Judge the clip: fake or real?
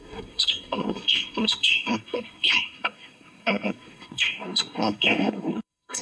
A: fake